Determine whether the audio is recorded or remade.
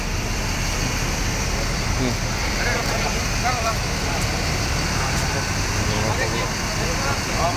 remade